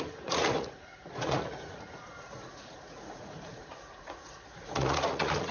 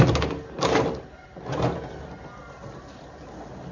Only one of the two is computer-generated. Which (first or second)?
first